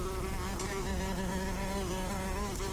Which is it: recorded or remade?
recorded